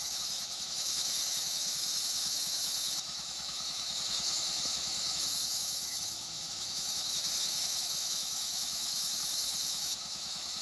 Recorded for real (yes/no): no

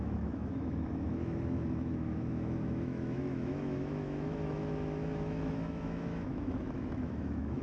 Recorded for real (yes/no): no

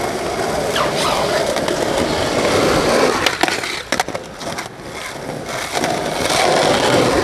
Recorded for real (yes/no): yes